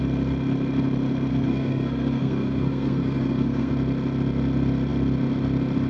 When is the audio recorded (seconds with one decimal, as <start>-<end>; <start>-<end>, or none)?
0.0-1.3; 3.7-5.9